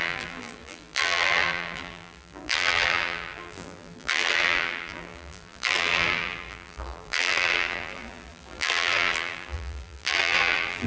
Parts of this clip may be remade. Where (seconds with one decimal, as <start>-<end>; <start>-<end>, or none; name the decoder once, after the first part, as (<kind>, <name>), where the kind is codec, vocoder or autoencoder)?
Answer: 0.0-10.9 (vocoder, BigVGAN v2)